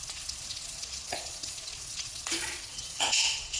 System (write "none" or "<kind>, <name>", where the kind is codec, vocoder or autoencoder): vocoder, Vocos